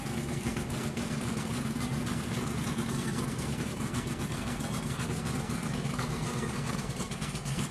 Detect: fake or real fake